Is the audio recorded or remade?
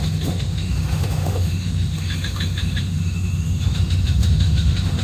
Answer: remade